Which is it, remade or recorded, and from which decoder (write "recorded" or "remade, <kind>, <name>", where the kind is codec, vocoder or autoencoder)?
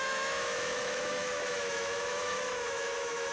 remade, autoencoder, DAC-VAE